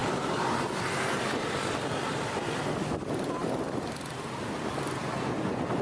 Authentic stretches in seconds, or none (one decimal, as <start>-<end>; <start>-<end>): 1.5-5.8